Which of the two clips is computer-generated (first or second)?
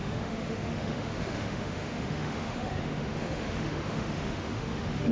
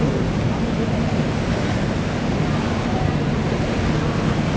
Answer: first